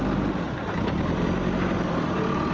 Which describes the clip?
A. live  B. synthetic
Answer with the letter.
A